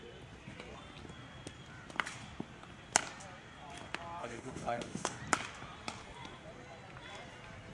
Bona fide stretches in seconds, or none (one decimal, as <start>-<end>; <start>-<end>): 0.0-4.2; 5.2-7.7